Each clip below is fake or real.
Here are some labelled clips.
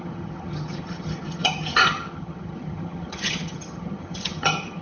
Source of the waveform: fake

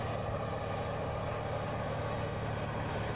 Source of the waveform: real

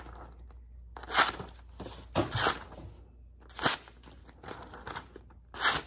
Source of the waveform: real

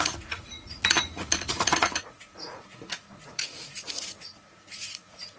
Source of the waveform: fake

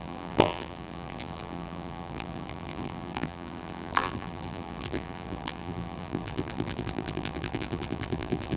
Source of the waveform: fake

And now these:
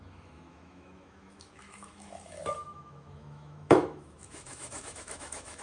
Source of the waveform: fake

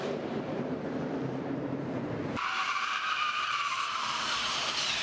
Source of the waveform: fake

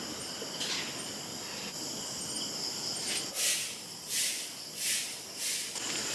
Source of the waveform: real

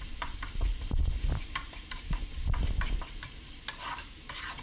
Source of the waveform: real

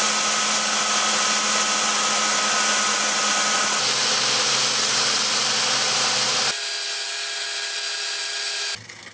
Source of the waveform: real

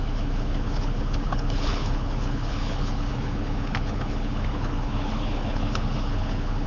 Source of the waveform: fake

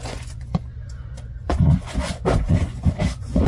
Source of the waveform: fake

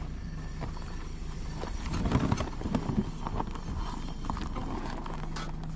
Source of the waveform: real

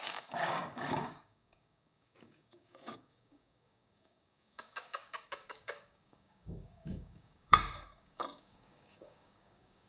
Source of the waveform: fake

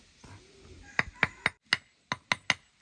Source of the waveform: real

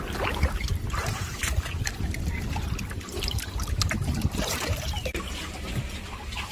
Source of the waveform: fake